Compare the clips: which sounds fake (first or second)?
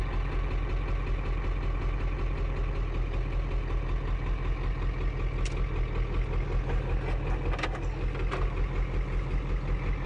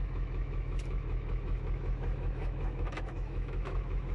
second